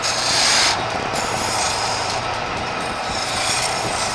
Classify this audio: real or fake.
fake